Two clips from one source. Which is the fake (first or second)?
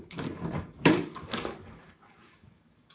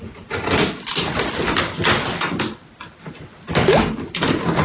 first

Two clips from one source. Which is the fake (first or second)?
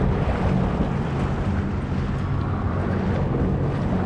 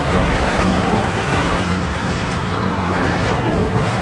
second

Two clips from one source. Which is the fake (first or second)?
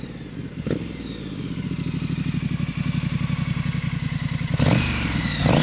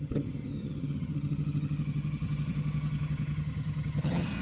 second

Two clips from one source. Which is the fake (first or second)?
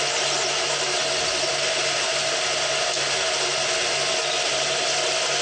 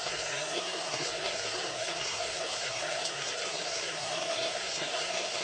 second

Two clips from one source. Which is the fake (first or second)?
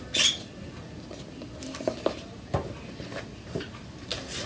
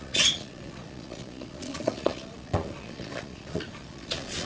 second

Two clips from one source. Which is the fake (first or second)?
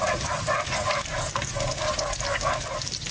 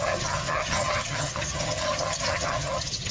second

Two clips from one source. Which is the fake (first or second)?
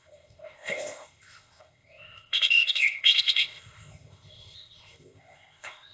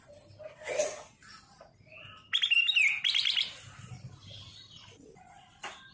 first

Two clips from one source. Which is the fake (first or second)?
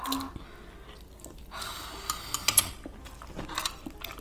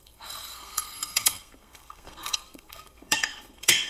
second